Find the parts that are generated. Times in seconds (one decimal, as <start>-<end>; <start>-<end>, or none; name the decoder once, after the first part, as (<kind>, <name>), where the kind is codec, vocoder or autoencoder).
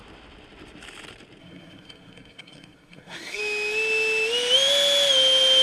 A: 1.4-3.4 (codec, SNAC)